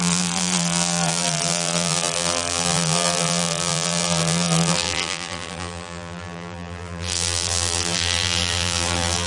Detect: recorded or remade remade